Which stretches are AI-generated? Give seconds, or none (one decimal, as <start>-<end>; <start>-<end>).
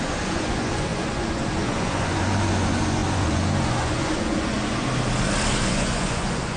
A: 0.0-4.9; 5.5-6.6